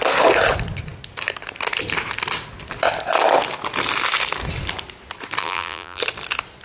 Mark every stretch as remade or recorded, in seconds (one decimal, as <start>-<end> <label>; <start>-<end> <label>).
0.0-5.4 recorded; 5.4-6.0 remade; 6.0-6.6 recorded